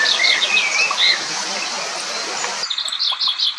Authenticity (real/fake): real